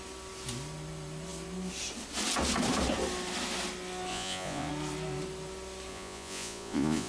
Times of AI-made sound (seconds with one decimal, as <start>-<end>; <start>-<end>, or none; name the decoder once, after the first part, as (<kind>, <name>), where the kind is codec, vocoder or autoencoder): 4.1-4.7 (vocoder, Vocos); 5.9-7.1